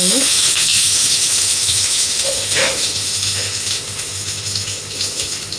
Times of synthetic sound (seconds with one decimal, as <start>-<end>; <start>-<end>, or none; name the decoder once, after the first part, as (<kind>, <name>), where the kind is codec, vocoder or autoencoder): 0.0-5.6 (autoencoder, DAC-VAE)